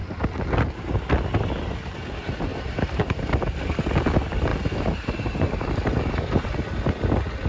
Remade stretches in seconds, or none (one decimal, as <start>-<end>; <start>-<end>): 2.5-3.2; 4.5-6.5